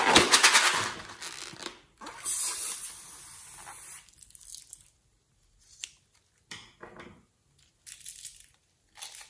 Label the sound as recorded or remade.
recorded